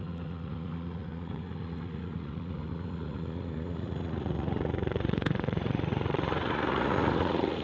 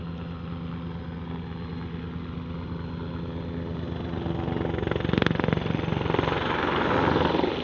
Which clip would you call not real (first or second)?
first